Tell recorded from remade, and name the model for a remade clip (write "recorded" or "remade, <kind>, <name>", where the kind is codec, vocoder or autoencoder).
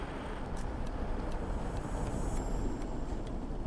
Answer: recorded